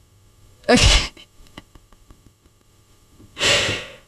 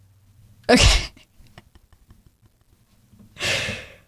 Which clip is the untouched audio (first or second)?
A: second